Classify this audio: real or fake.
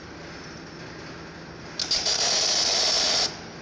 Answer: real